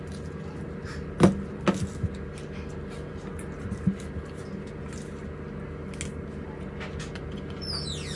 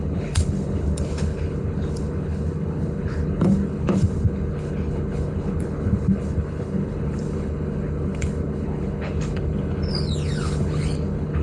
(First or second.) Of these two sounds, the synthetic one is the second